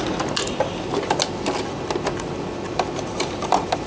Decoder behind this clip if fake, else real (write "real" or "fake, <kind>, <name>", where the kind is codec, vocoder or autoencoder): real